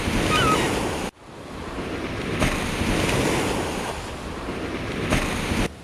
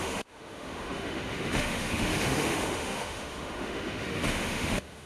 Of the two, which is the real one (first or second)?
first